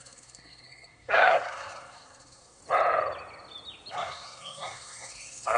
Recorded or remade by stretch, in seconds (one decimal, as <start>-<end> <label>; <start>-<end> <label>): 0.0-2.6 remade; 2.6-3.9 recorded; 3.9-5.6 remade